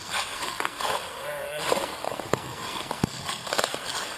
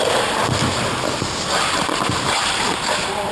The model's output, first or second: first